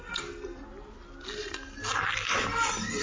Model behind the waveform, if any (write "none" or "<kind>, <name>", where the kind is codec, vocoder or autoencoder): none